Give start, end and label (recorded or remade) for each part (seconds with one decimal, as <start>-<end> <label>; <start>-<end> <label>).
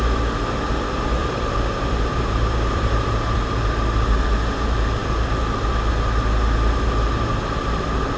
0.0-1.2 recorded; 1.2-4.2 remade; 4.2-5.0 recorded; 5.0-5.9 remade; 5.9-8.2 recorded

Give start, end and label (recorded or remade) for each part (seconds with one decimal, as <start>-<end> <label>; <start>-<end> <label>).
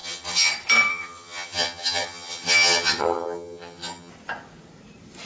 0.0-0.5 remade; 0.5-0.9 recorded; 0.9-4.1 remade; 4.1-5.3 recorded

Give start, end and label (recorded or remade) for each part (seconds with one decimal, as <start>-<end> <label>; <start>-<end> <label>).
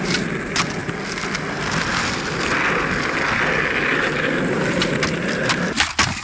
0.0-6.2 recorded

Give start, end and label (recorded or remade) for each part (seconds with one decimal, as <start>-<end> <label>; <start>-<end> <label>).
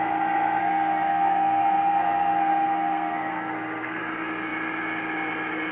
0.0-0.6 recorded; 0.6-4.0 remade; 4.0-5.7 recorded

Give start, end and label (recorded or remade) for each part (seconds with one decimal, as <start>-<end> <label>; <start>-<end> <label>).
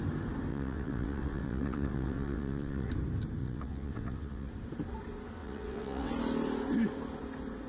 0.0-0.5 recorded; 0.5-2.9 remade; 2.9-3.4 recorded; 3.4-4.5 remade; 4.5-5.4 recorded; 5.4-6.1 remade; 6.1-7.7 recorded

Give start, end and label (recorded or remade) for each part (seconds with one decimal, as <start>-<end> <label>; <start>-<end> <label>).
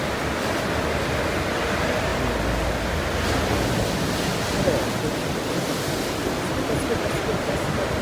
0.0-2.1 remade; 2.1-6.9 recorded; 6.9-8.0 remade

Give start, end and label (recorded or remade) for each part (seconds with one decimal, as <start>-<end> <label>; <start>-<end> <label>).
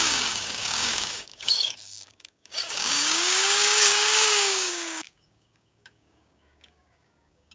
0.0-7.5 remade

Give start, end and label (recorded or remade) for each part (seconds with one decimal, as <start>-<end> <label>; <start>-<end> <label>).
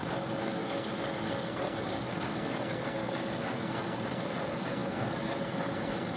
0.0-6.2 remade